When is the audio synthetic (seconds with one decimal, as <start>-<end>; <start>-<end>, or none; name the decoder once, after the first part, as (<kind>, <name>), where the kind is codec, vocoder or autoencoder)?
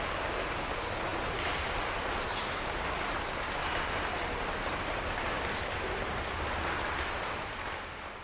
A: none